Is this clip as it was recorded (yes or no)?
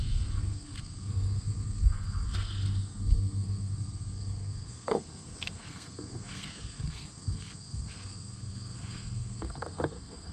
no